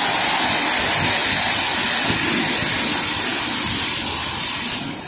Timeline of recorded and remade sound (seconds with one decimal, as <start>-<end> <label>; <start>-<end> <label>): 0.0-5.1 recorded